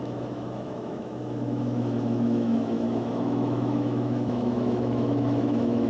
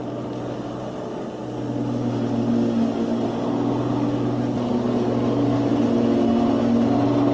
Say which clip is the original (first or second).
second